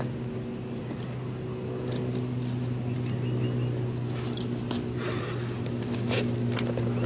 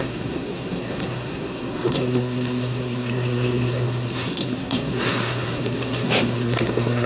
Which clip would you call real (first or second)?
first